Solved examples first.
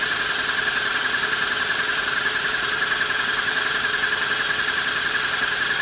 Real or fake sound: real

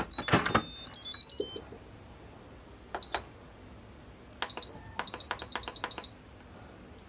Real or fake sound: real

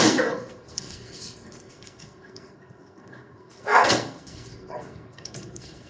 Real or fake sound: fake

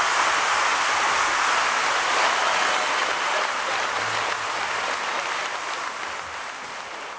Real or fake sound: real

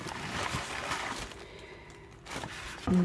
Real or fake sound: real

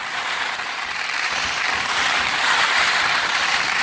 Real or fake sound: fake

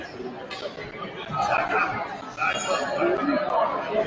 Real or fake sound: real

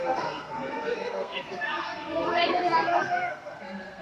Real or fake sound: fake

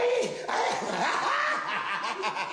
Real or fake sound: real